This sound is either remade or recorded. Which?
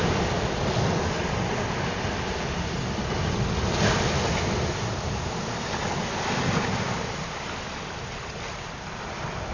recorded